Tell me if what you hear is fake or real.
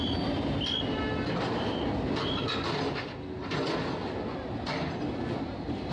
real